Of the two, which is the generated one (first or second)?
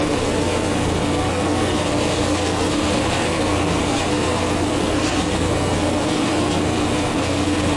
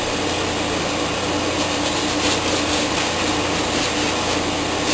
first